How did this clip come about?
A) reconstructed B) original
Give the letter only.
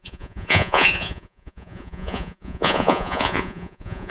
A